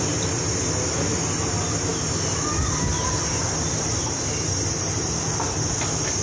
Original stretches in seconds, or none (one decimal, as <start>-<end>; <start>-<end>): 0.0-6.2